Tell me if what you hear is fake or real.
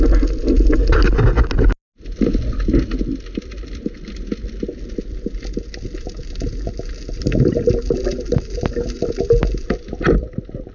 real